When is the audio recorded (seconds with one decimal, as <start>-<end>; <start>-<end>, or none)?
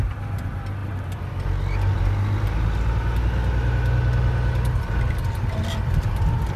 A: 0.0-6.6